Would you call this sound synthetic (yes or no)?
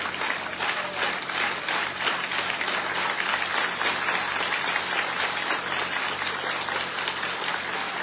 no